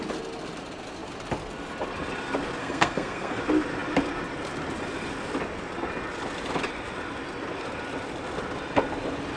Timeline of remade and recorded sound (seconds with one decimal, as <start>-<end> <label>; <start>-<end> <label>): 0.0-2.6 recorded; 2.6-3.4 remade; 3.4-9.4 recorded